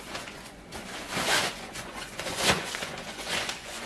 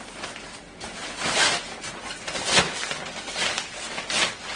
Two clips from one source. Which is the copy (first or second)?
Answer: first